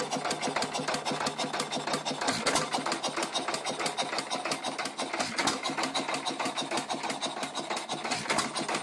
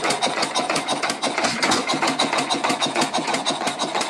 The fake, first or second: second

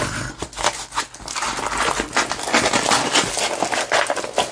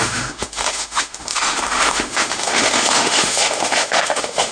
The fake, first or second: second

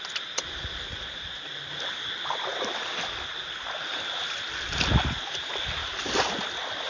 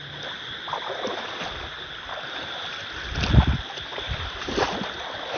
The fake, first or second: second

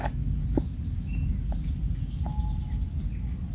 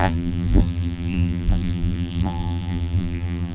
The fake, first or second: second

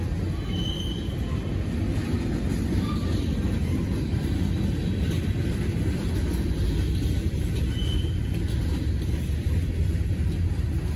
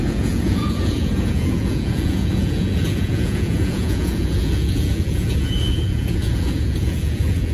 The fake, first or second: second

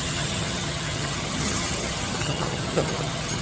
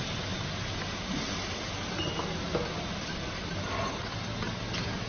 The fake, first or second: first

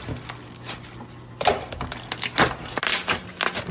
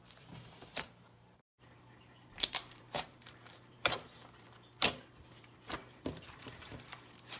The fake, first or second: second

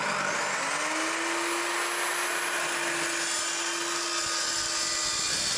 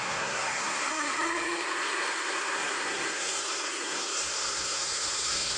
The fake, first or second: second